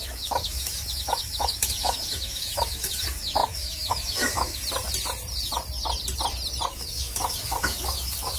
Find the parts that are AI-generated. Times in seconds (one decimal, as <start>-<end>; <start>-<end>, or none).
0.0-4.6; 6.7-8.4